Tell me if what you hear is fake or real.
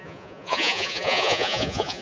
fake